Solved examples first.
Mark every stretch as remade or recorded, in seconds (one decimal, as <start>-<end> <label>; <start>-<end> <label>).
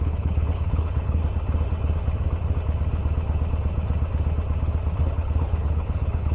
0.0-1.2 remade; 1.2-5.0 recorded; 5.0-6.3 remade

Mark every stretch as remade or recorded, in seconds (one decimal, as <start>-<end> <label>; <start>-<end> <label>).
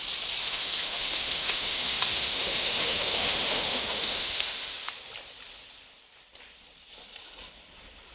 0.0-0.4 recorded; 0.4-4.9 remade; 4.9-8.1 recorded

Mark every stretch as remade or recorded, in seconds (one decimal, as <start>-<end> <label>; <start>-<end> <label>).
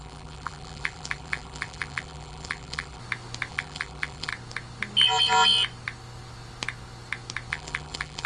0.0-3.0 remade; 3.0-3.5 recorded; 3.5-4.3 remade; 4.3-7.5 recorded; 7.5-8.3 remade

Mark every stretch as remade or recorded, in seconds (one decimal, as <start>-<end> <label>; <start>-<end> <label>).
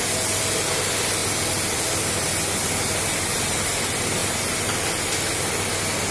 0.0-1.2 recorded; 1.2-3.6 remade; 3.6-4.2 recorded; 4.2-5.1 remade; 5.1-6.1 recorded